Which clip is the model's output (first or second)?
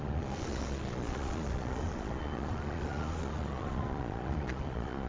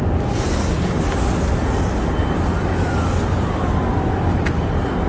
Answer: first